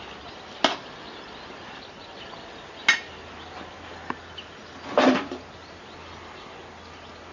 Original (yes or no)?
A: yes